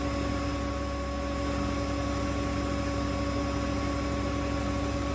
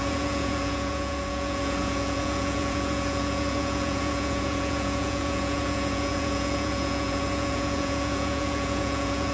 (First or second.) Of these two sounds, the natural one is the first